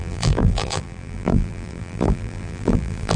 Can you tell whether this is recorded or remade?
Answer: remade